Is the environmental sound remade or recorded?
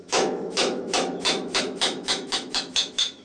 remade